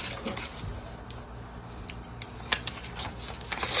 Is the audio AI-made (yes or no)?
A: no